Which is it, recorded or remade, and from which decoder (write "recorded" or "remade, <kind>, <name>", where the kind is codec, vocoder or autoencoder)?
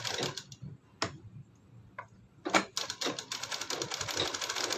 recorded